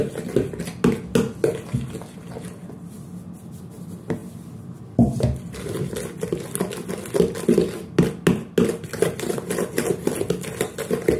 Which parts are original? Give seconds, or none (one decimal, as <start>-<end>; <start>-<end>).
0.0-11.2